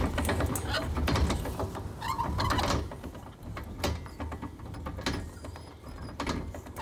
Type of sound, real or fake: real